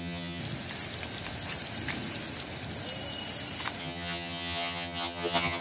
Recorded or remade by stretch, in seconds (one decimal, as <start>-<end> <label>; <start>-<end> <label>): 0.0-0.4 remade; 0.4-3.8 recorded; 3.8-5.6 remade